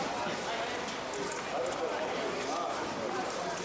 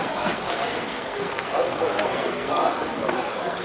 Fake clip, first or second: second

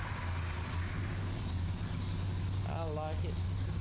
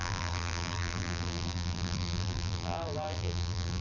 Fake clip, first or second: second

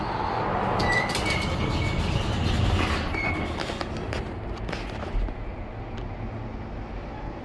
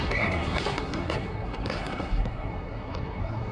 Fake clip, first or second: second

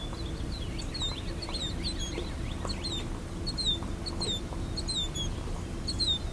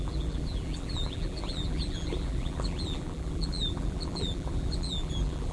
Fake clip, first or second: second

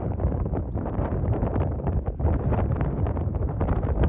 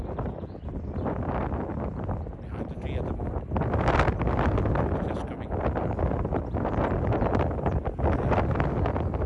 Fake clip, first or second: first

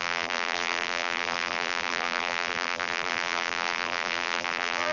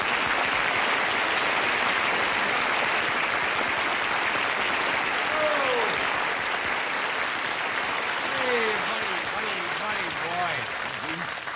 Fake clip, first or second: first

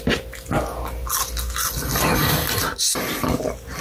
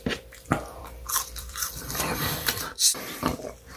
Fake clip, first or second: second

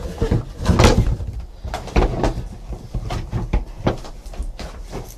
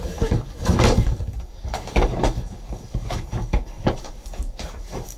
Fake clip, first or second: second